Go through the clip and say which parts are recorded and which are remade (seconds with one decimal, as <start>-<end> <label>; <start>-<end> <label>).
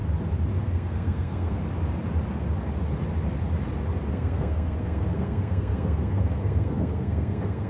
0.0-0.6 recorded; 0.6-1.6 remade; 1.6-4.1 recorded; 4.1-7.7 remade